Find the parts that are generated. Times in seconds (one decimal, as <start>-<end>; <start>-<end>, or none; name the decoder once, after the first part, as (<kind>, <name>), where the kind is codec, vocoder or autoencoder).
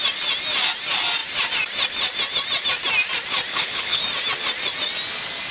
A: 3.5-4.0 (codec, HILCodec)